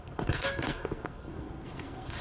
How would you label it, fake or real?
fake